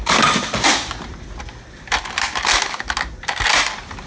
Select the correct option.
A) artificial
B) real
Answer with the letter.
B